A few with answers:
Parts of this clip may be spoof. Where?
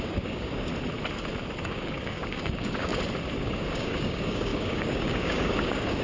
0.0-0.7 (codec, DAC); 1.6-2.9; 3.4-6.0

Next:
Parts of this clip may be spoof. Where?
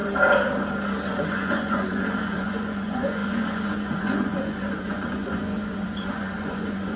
1.1-7.0 (vocoder, Vocos)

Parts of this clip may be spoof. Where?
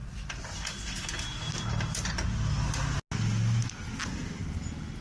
none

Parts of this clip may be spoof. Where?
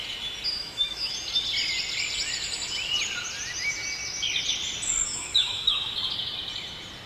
0.6-1.1 (autoencoder, DAC-VAE); 5.0-5.9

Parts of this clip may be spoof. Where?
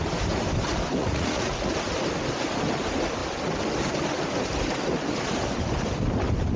1.0-1.7 (vocoder, Vocos)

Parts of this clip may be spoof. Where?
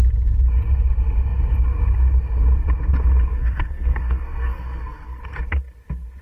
3.3-5.2 (codec, SNAC)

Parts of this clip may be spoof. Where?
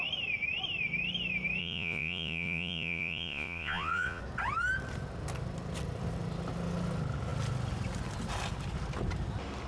1.6-4.2 (vocoder, Vocos)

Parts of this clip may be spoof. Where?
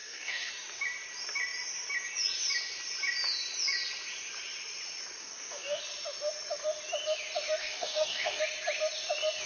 0.0-0.5 (codec, DAC); 5.2-5.8; 7.6-8.4